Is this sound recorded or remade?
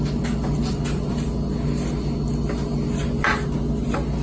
recorded